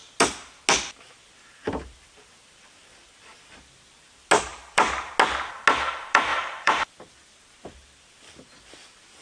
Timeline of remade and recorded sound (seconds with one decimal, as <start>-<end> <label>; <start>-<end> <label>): 0.0-4.5 recorded; 4.5-5.1 remade; 5.1-6.3 recorded; 6.3-6.9 remade; 6.9-9.2 recorded